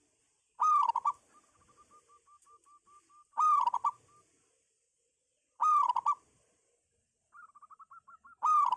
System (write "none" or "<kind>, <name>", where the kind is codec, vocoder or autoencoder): none